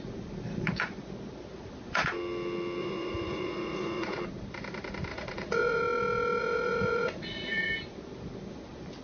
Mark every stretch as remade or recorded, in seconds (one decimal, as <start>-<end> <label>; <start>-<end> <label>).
0.0-2.8 recorded; 2.8-4.2 remade; 4.2-5.1 recorded; 5.1-5.8 remade; 5.8-6.4 recorded; 6.4-7.7 remade; 7.7-9.0 recorded